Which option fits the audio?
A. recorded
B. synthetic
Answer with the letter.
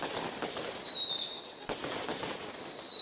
A